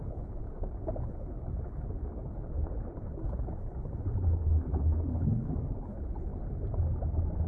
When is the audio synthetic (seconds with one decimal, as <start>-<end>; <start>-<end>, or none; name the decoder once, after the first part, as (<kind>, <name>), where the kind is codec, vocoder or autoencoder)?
0.0-6.3 (codec, HILCodec)